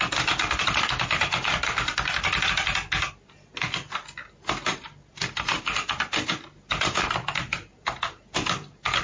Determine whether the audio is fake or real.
real